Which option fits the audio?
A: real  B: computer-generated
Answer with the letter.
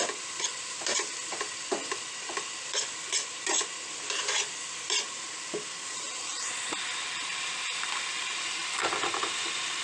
B